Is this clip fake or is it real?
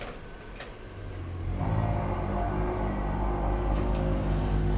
real